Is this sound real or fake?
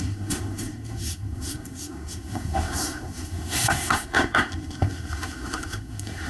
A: fake